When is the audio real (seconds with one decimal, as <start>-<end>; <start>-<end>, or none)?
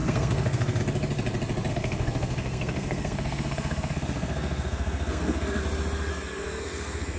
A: 0.8-1.7; 5.6-6.1